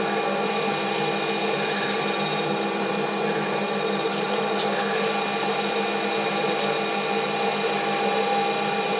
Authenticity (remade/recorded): recorded